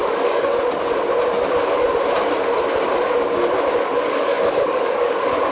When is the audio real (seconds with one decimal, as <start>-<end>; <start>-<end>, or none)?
0.5-3.8

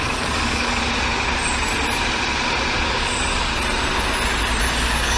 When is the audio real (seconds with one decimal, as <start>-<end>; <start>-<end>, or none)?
0.8-2.9; 3.5-4.8